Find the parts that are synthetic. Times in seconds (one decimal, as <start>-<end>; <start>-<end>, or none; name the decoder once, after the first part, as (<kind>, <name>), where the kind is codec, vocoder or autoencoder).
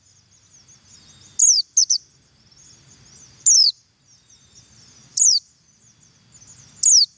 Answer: 5.1-5.8 (vocoder, BigVGAN v2)